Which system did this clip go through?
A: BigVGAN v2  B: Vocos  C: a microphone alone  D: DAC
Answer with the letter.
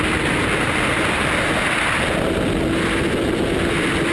C